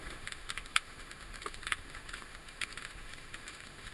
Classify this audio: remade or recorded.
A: remade